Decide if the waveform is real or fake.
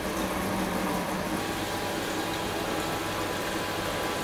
real